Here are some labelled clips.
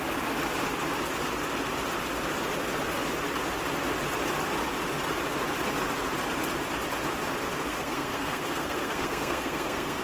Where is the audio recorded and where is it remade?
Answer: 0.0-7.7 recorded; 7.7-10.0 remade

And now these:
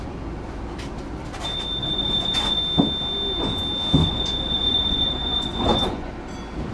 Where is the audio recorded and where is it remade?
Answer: 0.0-1.8 recorded; 1.8-2.6 remade; 2.6-4.0 recorded; 4.0-6.1 remade; 6.1-6.7 recorded

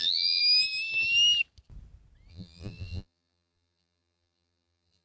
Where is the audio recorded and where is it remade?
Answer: 0.0-0.4 remade; 0.4-2.3 recorded; 2.3-5.0 remade

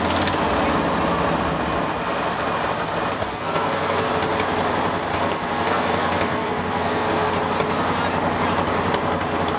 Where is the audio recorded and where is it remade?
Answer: 0.0-3.2 recorded; 3.2-4.1 remade; 4.1-5.1 recorded; 5.1-7.3 remade; 7.3-9.6 recorded

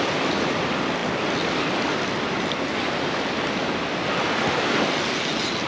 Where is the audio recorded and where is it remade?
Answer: 0.0-5.7 recorded

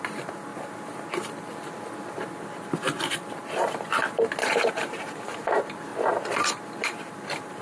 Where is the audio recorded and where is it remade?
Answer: 0.0-0.5 remade; 0.5-4.4 recorded; 4.4-5.9 remade; 5.9-6.8 recorded; 6.8-7.6 remade

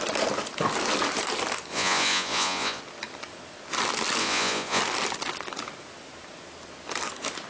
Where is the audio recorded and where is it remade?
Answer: 0.0-1.7 recorded; 1.7-2.8 remade; 2.8-4.2 recorded; 4.2-4.8 remade; 4.8-7.5 recorded

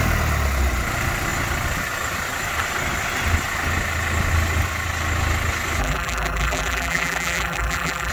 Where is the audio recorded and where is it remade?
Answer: 0.0-5.8 recorded; 5.8-8.1 remade